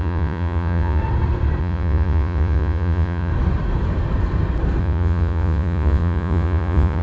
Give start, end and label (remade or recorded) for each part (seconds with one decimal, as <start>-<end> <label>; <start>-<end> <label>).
0.0-1.0 remade; 1.0-1.6 recorded; 1.6-3.3 remade; 3.3-4.8 recorded; 4.8-7.0 remade